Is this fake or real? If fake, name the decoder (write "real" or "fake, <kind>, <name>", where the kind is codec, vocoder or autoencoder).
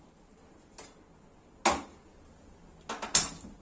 real